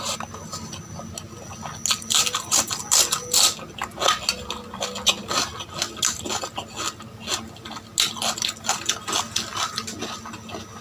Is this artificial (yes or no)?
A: no